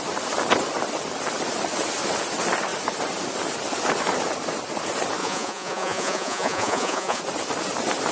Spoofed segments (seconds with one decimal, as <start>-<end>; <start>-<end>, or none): 5.2-7.2